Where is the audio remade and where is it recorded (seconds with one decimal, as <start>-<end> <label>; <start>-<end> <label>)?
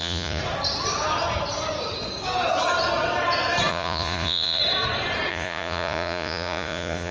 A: 0.0-0.4 remade; 0.4-3.7 recorded; 3.7-4.6 remade; 4.6-5.3 recorded; 5.3-7.1 remade